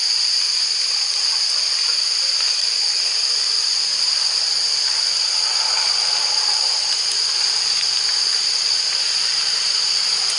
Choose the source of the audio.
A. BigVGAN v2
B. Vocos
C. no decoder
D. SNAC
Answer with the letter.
C